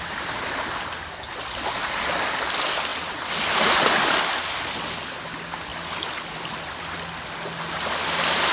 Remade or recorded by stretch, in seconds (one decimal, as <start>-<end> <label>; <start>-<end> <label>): 0.0-8.5 recorded